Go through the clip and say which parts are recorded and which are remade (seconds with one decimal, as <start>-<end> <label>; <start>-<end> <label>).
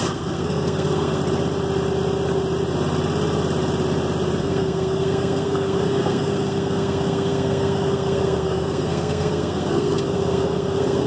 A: 0.0-1.2 remade; 1.2-4.4 recorded; 4.4-11.1 remade